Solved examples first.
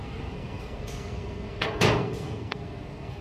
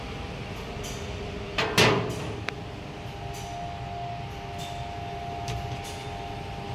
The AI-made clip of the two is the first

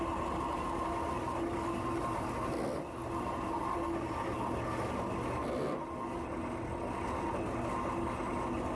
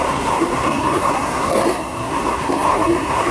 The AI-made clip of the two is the second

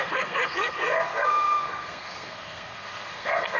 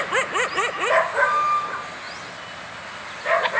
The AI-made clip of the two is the first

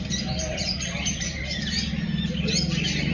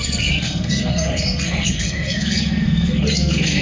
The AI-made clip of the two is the second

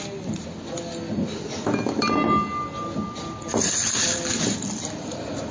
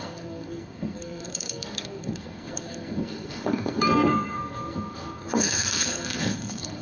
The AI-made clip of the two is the second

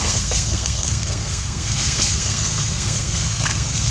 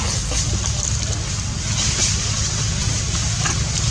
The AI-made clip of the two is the first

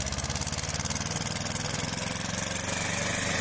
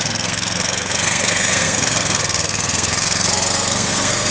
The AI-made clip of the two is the second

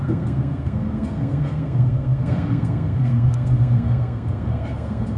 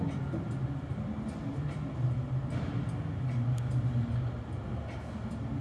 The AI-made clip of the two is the first